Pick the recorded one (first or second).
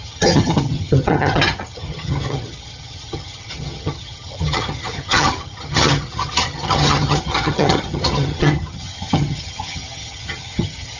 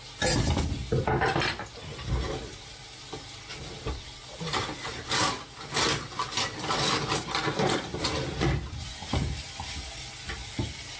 second